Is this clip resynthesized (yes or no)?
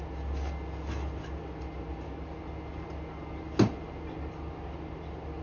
no